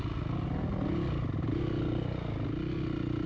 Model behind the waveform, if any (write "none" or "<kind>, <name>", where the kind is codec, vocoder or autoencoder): none